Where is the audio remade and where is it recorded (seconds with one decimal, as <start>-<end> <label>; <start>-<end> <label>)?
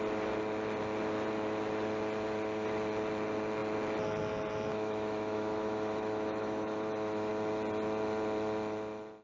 0.0-4.7 recorded; 4.7-7.3 remade; 7.3-9.2 recorded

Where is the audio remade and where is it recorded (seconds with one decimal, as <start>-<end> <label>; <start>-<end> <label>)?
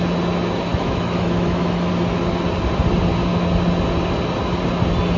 0.0-0.7 recorded; 0.7-1.9 remade; 1.9-5.2 recorded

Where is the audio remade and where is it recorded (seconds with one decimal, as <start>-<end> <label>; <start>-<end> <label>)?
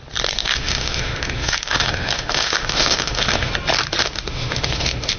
0.0-0.4 recorded; 0.4-3.5 remade; 3.5-4.0 recorded; 4.0-5.2 remade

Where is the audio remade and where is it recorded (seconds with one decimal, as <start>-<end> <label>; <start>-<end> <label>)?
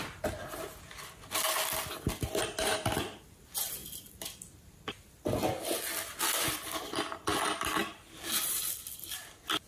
0.0-9.7 recorded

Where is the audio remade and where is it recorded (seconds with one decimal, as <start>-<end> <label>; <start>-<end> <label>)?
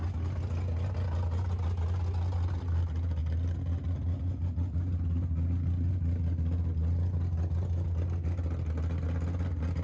0.0-9.8 recorded